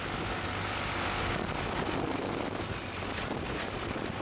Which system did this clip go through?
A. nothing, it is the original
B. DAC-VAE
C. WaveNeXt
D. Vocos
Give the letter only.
A